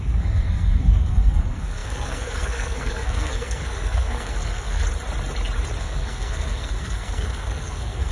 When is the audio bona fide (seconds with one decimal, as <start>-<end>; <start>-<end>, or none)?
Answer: 4.8-5.8